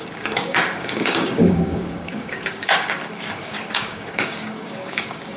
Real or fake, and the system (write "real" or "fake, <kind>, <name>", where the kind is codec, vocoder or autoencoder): fake, codec, DAC